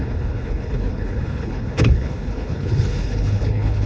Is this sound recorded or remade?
remade